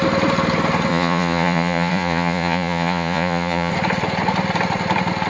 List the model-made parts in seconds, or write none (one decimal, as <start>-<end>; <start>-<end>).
0.9-3.7